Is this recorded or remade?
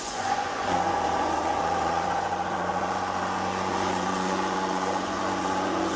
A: remade